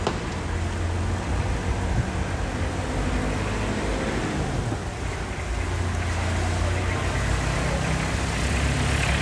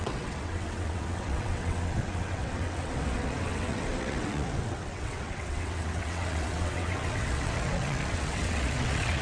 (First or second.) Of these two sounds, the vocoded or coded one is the second